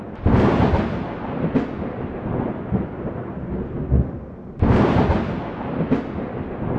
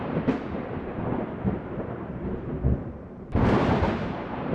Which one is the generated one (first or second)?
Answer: second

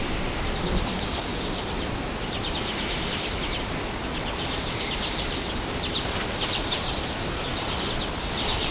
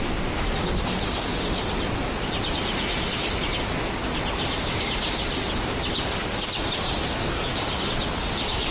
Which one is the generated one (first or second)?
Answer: first